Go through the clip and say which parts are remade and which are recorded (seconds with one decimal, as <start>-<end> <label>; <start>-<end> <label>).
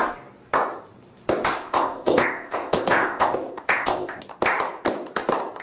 0.0-1.6 recorded; 1.6-4.2 remade; 4.2-5.6 recorded